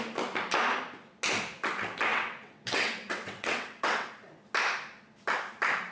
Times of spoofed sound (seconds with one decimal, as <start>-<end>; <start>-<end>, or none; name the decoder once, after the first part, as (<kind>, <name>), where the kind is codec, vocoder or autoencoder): 2.1-4.1 (vocoder, WaveNeXt)